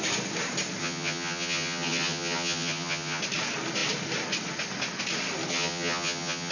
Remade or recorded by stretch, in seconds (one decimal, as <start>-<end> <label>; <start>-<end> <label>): 0.0-0.8 recorded; 0.8-3.2 remade; 3.2-5.5 recorded; 5.5-6.5 remade